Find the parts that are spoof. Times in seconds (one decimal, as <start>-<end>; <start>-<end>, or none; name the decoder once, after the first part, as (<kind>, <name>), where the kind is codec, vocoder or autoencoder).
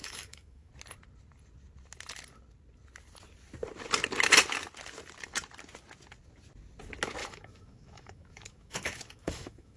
0.0-0.7 (autoencoder, DAC-VAE); 7.2-9.8